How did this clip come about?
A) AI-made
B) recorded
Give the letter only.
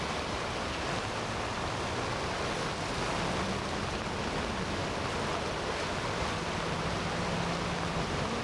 B